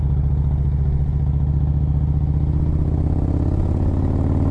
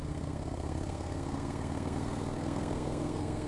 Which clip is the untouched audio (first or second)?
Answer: first